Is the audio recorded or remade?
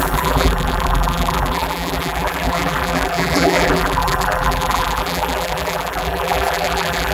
remade